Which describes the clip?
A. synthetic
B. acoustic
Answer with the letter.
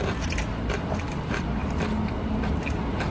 B